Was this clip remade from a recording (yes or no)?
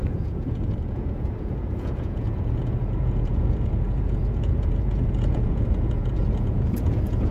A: yes